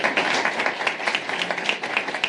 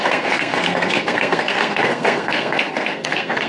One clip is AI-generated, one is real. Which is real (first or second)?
first